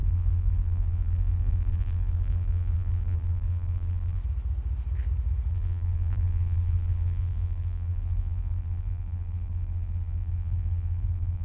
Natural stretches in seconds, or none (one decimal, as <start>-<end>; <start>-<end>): 4.2-5.5